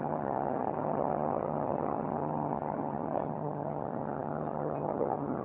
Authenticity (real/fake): fake